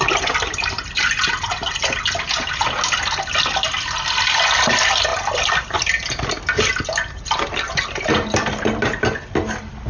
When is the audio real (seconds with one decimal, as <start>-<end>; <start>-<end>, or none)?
0.0-9.9